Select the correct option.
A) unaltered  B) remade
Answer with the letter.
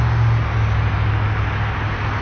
A